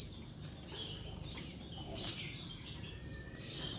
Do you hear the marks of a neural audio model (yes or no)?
yes